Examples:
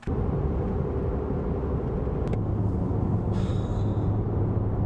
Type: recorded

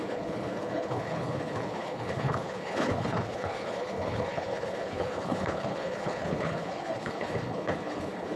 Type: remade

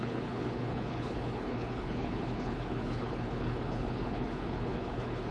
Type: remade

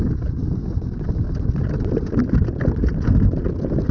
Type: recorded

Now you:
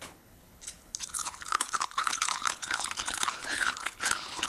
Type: remade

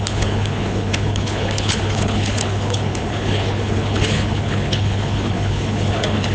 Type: remade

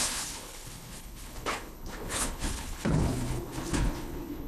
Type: remade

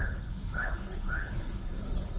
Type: remade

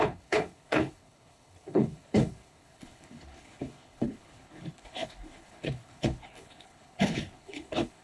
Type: remade